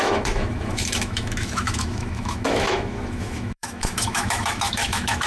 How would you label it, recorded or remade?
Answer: remade